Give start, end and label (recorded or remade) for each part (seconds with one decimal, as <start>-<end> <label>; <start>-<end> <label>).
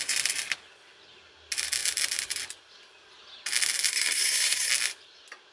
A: 0.0-3.9 recorded; 3.9-4.7 remade; 4.7-5.5 recorded